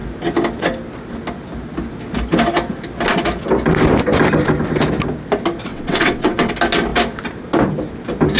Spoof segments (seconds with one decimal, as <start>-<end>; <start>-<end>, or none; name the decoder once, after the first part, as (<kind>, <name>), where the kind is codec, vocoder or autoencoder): 5.7-6.5 (vocoder, WaveNeXt)